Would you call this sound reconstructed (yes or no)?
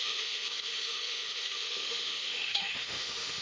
yes